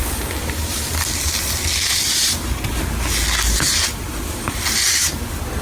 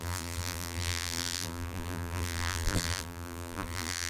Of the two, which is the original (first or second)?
first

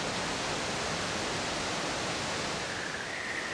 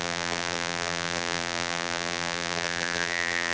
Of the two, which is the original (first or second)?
first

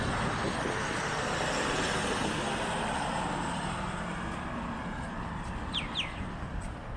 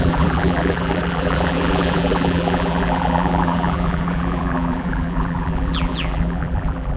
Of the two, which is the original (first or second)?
first